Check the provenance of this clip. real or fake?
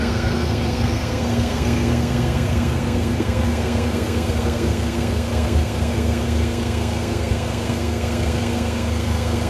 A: fake